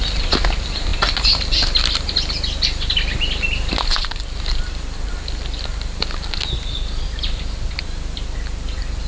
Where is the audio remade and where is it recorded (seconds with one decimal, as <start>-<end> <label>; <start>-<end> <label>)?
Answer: 0.0-9.1 recorded